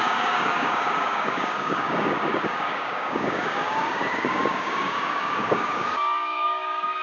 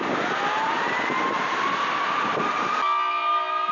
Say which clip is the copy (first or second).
first